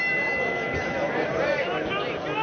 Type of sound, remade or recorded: recorded